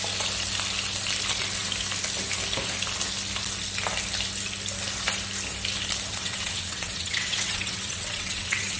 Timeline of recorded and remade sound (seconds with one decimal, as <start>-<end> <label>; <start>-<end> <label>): 0.0-6.1 recorded; 6.1-8.8 remade